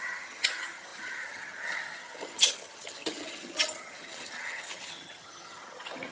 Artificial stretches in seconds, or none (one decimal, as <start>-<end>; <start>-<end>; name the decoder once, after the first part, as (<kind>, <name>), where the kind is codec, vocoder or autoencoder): 0.0-6.1 (vocoder, HiFi-GAN)